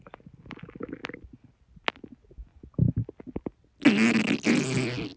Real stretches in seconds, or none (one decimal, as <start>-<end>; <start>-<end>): 0.0-5.2